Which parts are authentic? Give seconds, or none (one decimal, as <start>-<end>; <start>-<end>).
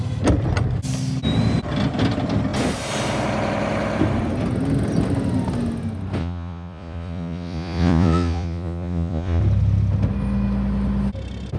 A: 0.0-6.2; 9.4-11.6